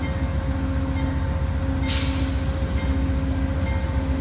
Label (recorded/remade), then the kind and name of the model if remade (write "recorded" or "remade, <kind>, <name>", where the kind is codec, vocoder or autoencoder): recorded